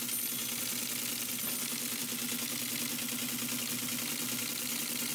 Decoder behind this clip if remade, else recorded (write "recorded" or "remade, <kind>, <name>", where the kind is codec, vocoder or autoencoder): recorded